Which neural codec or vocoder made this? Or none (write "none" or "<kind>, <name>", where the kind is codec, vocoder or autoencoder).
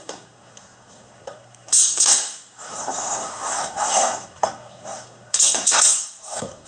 codec, SNAC